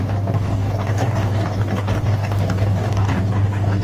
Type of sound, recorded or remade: remade